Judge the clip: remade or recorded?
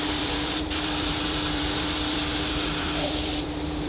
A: remade